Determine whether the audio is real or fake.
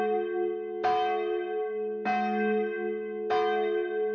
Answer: real